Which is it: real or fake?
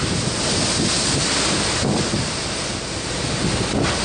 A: real